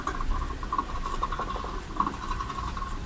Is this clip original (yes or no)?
no